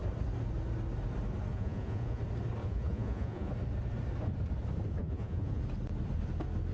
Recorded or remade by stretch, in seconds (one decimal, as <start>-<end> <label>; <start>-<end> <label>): 0.0-1.5 recorded; 1.5-2.2 remade; 2.2-2.6 recorded; 2.6-3.5 remade; 3.5-5.0 recorded; 5.0-5.6 remade; 5.6-6.7 recorded